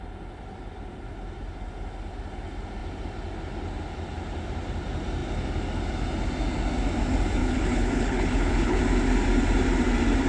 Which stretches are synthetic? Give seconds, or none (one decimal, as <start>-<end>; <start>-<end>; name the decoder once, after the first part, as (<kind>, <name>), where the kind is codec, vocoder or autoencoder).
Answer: 7.4-8.8 (codec, HILCodec)